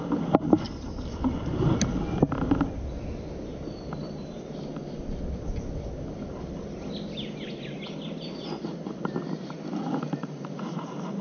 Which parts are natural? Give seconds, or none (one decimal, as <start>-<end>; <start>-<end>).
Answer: 0.0-11.2